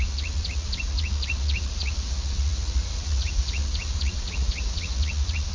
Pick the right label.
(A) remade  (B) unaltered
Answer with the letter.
A